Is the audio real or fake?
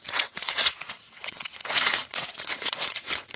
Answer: fake